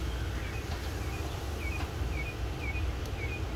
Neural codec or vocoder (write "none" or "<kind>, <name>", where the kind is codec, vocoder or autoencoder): none